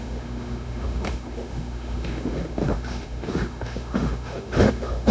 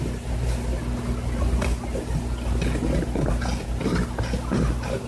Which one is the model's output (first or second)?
first